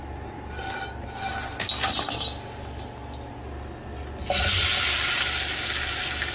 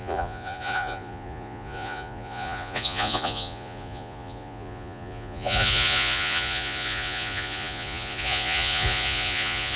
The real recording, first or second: first